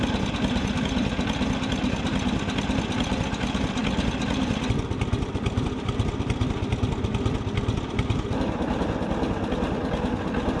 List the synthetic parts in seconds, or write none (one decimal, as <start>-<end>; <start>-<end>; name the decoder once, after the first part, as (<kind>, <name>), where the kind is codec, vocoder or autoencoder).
none